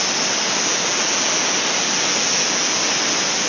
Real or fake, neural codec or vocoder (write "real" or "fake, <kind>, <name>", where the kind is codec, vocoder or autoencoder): real